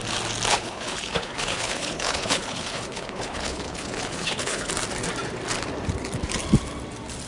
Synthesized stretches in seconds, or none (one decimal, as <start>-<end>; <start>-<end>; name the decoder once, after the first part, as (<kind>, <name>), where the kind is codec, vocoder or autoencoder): 0.5-4.7 (codec, HILCodec)